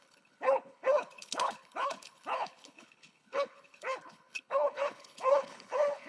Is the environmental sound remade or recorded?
remade